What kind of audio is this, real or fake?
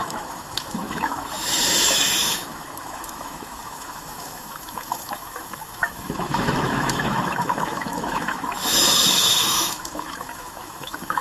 fake